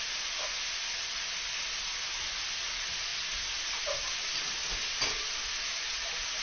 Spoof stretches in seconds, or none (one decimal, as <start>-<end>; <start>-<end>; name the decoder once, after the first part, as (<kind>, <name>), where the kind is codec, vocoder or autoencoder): none